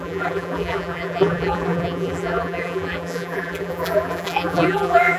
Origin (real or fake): fake